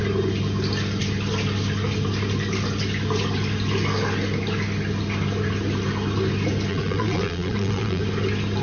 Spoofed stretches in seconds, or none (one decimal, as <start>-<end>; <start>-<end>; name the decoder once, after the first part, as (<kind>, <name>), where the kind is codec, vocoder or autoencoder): 6.7-8.0 (vocoder, Vocos)